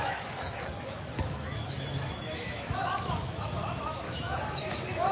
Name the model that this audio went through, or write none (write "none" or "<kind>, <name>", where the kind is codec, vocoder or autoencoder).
autoencoder, DAC-VAE